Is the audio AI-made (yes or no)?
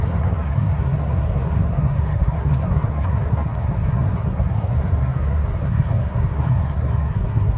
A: yes